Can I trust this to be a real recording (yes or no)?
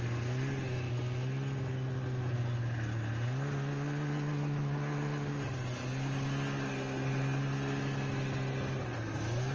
yes